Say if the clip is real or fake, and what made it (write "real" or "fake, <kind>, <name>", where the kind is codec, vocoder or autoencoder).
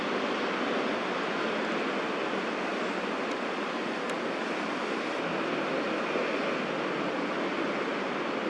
real